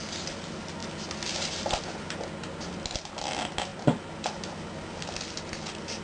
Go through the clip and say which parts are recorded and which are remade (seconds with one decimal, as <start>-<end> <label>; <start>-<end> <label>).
0.0-6.0 recorded